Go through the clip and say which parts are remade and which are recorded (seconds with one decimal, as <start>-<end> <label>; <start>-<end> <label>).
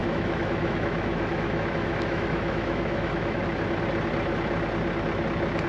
0.0-3.4 remade; 3.4-5.7 recorded